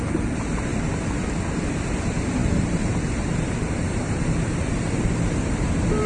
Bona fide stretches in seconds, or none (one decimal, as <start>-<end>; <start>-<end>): 0.0-2.4; 4.2-6.1